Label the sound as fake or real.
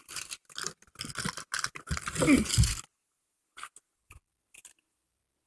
real